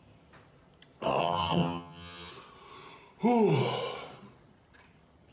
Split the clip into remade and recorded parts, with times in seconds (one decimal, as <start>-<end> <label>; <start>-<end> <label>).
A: 0.0-1.2 recorded; 1.2-2.3 remade; 2.3-5.3 recorded